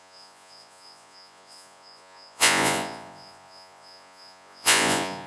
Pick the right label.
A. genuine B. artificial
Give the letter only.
B